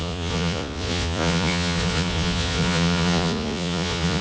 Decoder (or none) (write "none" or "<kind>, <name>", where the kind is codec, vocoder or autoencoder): vocoder, Vocos